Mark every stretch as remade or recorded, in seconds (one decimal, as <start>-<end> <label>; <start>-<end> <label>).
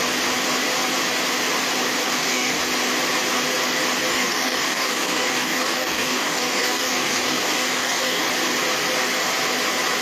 0.0-2.0 recorded; 2.0-2.6 remade; 2.6-4.1 recorded; 4.1-8.3 remade; 8.3-10.0 recorded